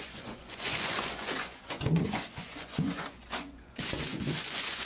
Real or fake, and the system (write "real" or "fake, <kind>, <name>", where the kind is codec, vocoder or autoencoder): fake, vocoder, Vocos